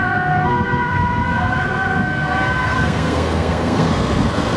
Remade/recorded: remade